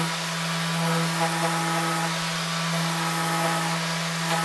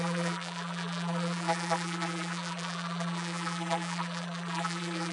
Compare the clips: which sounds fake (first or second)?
second